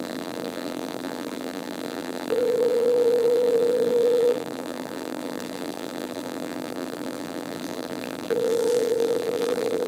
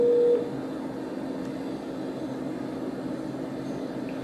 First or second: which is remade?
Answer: first